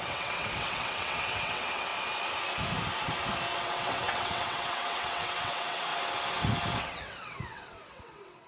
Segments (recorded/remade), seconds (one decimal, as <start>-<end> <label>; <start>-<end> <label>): 0.0-1.9 remade; 1.9-3.6 recorded; 3.6-5.9 remade; 5.9-6.8 recorded; 6.8-8.5 remade